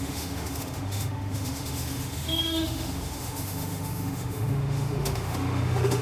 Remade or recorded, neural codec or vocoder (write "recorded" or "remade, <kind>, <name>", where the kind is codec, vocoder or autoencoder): remade, autoencoder, DAC-VAE